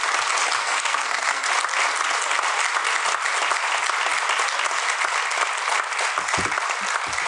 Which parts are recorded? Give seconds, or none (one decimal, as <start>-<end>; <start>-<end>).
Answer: 0.0-0.6; 1.5-7.3